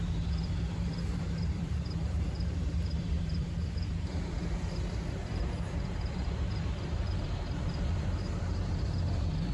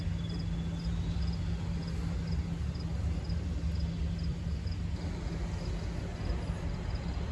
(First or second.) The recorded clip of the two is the second